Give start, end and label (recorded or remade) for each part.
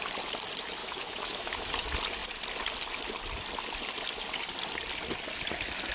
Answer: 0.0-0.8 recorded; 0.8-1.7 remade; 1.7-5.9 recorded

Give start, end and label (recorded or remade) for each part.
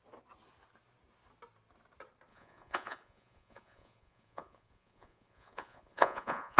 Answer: 0.0-2.3 recorded; 2.3-6.6 remade